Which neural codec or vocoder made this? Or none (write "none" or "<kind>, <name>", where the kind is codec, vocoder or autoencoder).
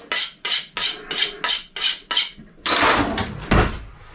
none